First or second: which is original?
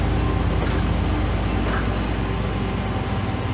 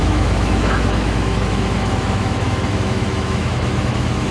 first